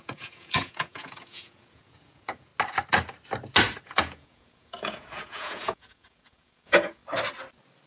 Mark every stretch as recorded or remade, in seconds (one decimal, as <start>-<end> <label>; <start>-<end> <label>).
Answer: 0.0-2.5 remade; 2.5-3.8 recorded; 3.8-7.0 remade; 7.0-7.9 recorded